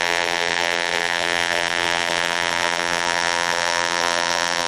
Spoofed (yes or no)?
yes